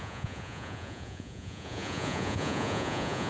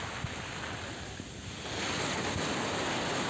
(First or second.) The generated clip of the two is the first